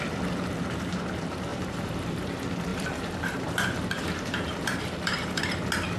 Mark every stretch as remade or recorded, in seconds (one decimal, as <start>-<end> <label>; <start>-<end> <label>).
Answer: 0.0-1.5 recorded; 1.5-2.3 remade; 2.3-2.7 recorded; 2.7-5.4 remade; 5.4-6.0 recorded